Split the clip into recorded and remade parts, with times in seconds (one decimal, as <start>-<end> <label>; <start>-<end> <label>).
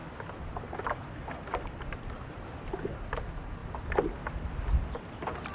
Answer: 0.0-3.6 remade; 3.6-4.3 recorded; 4.3-5.5 remade